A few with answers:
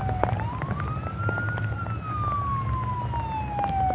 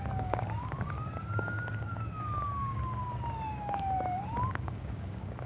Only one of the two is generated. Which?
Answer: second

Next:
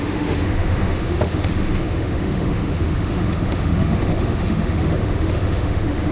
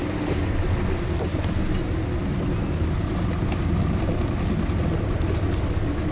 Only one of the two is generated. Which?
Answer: first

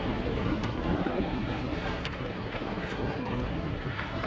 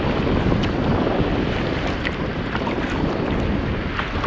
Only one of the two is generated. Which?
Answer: first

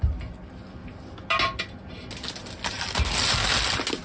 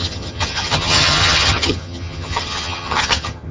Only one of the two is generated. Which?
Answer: second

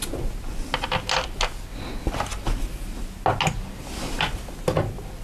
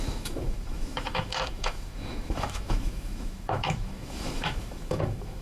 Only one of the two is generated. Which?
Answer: second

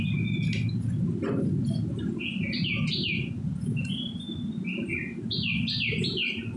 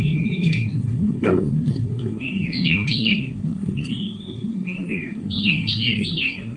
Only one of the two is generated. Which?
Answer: second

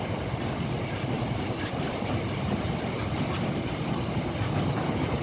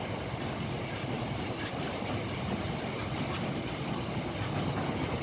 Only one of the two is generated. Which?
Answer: first